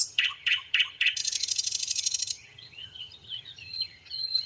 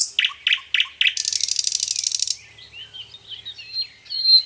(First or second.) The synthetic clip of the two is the first